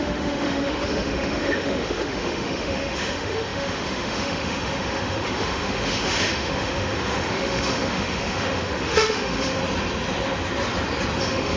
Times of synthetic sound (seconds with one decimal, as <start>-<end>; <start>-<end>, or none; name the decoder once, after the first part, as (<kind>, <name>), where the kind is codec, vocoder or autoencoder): 0.0-9.6 (autoencoder, DAC-VAE); 11.2-11.6